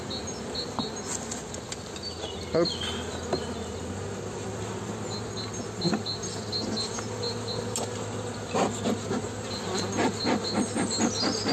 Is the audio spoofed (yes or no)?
no